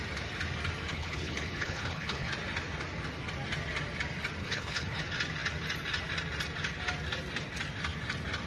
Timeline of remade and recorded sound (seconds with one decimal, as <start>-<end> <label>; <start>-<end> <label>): 0.0-0.9 recorded; 0.9-2.3 remade; 2.3-4.4 recorded; 4.4-5.0 remade; 5.0-8.5 recorded